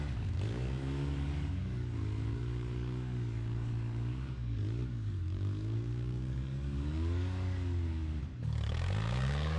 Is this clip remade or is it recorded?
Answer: remade